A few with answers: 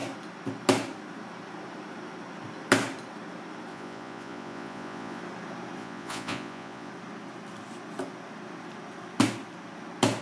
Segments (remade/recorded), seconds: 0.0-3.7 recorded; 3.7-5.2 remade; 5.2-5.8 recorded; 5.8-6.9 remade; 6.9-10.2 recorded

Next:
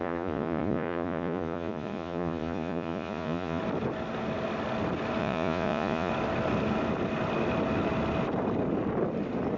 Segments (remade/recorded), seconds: 0.0-3.6 remade; 3.6-5.2 recorded; 5.2-6.1 remade; 6.1-9.6 recorded

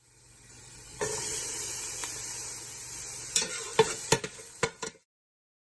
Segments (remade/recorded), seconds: 0.0-0.9 recorded; 0.9-1.4 remade; 1.4-5.8 recorded